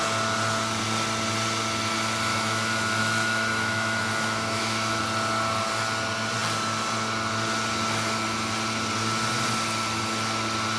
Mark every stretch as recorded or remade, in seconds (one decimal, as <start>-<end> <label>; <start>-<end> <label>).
0.0-2.3 recorded; 2.3-5.0 remade; 5.0-10.8 recorded